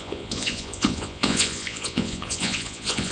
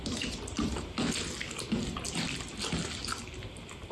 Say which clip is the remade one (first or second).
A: first